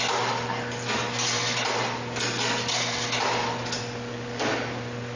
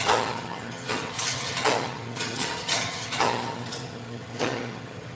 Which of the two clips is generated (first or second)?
second